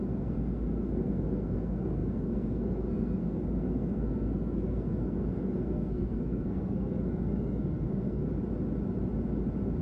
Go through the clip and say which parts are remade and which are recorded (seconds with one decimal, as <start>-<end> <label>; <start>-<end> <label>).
0.0-8.2 remade; 8.2-9.8 recorded